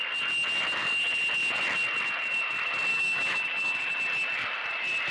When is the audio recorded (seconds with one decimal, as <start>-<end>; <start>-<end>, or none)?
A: 0.0-2.9; 3.8-5.1